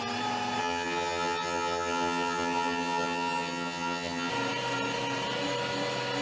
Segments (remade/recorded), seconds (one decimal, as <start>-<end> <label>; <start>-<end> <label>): 0.0-0.6 recorded; 0.6-4.3 remade; 4.3-6.2 recorded